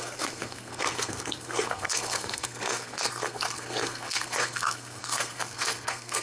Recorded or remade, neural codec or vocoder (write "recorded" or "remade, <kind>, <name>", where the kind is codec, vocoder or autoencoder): remade, codec, SNAC